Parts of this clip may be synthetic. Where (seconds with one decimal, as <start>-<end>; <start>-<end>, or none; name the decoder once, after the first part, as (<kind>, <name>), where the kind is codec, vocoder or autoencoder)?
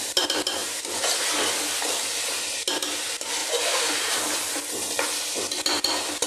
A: 0.6-1.3 (vocoder, BigVGAN v2); 3.4-4.7